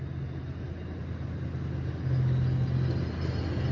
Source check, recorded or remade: recorded